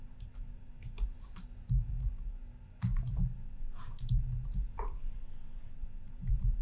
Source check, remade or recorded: remade